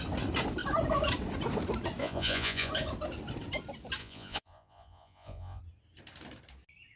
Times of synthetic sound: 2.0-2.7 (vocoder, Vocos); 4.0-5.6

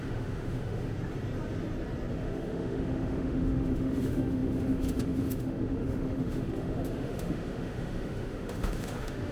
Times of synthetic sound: 0.0-0.9 (autoencoder, DAC-VAE); 2.1-9.3